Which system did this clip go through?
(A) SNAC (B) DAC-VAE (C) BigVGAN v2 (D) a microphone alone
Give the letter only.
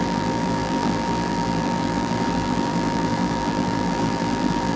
C